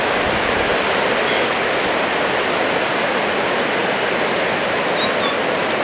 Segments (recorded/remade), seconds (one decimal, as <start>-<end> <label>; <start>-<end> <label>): 0.0-5.8 recorded